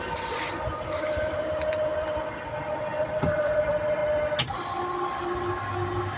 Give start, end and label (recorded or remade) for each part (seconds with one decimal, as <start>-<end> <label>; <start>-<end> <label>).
0.0-4.0 remade; 4.0-5.1 recorded; 5.1-6.2 remade